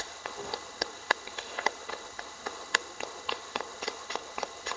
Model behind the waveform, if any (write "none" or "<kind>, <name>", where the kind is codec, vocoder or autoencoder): codec, HILCodec